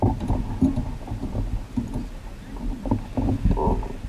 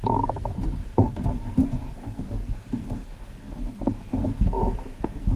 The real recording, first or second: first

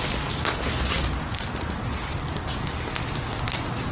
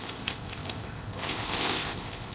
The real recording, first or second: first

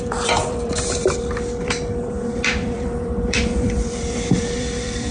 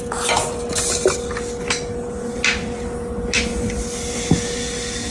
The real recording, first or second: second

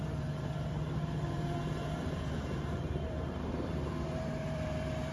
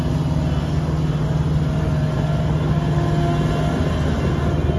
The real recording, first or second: second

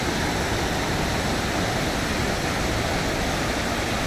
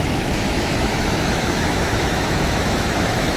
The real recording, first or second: first